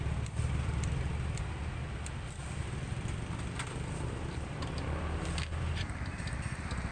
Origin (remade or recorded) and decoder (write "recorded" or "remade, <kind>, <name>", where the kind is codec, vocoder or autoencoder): remade, vocoder, BigVGAN v2